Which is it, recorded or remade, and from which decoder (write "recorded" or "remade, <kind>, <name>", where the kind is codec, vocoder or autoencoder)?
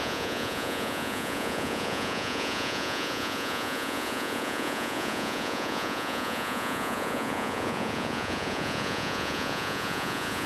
remade, vocoder, Vocos